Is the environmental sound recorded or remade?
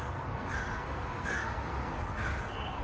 remade